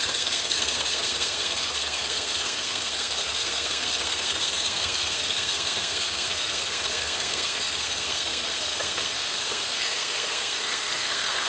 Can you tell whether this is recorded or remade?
remade